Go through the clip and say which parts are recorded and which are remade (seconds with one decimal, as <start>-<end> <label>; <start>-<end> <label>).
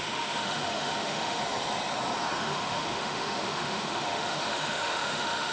0.0-1.4 remade; 1.4-2.4 recorded; 2.4-5.5 remade